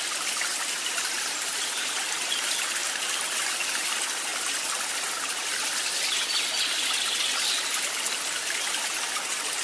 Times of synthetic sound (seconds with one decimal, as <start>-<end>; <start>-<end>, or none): 0.5-1.7; 2.8-3.5